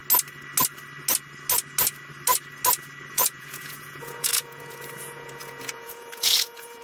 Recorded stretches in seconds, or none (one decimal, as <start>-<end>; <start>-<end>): 0.0-3.1